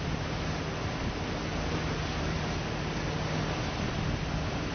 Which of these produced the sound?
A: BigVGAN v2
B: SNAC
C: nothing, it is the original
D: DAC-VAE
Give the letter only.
C